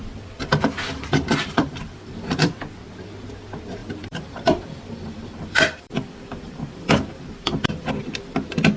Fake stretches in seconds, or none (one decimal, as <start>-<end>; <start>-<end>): 0.0-2.5; 3.8-7.9